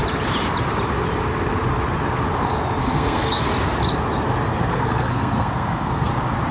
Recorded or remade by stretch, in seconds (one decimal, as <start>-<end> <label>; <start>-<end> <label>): 0.0-2.8 recorded; 2.8-3.4 remade; 3.4-4.5 recorded; 4.5-6.1 remade; 6.1-6.5 recorded